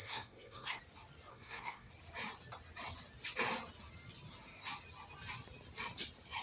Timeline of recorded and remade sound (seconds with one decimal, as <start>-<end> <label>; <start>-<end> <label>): 0.0-0.8 remade; 0.8-1.3 recorded; 1.3-1.9 remade; 1.9-6.4 recorded